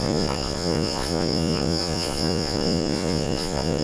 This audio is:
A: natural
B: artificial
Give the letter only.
B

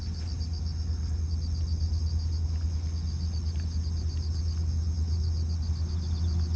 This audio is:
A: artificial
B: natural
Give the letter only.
B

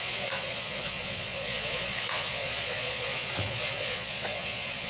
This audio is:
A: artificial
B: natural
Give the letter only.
A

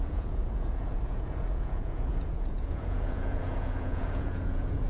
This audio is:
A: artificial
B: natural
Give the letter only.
A